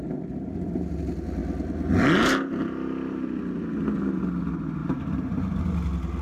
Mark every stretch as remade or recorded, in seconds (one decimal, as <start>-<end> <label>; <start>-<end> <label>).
0.0-4.8 recorded; 4.8-5.7 remade; 5.7-6.2 recorded